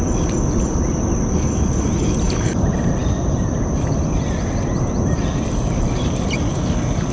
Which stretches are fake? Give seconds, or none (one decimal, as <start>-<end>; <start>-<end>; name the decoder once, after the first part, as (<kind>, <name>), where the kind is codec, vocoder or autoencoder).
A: none